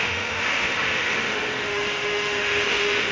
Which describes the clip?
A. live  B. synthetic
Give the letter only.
B